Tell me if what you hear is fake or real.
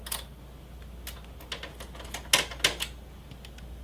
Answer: real